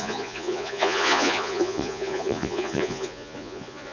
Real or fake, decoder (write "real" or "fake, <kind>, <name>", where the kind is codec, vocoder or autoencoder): fake, vocoder, Vocos